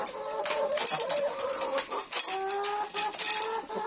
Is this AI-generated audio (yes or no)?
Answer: no